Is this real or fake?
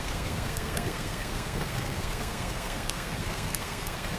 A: fake